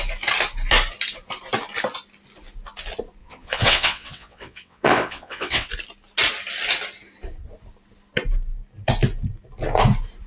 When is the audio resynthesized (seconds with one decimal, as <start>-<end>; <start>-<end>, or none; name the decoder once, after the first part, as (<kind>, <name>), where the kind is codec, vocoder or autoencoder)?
3.2-5.7 (vocoder, WaveNeXt)